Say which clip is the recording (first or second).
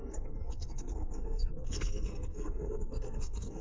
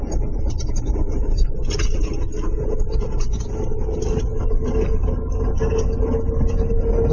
second